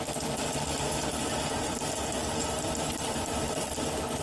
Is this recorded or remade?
remade